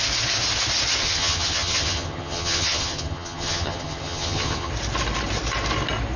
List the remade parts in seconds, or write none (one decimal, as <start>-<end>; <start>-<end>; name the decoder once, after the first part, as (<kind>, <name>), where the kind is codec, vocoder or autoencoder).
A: 1.0-4.7 (vocoder, HiFi-GAN)